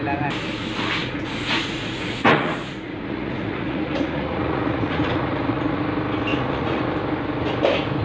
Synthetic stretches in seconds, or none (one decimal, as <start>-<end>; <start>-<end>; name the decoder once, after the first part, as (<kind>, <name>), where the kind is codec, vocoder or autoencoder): 1.0-5.8 (vocoder, Vocos); 6.3-6.8